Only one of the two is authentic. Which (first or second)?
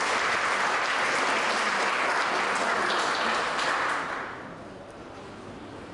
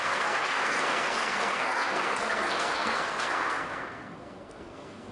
first